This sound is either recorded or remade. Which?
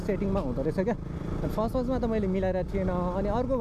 recorded